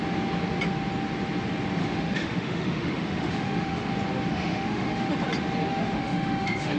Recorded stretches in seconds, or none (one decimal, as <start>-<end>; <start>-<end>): 0.0-1.8; 3.9-4.3; 5.1-5.7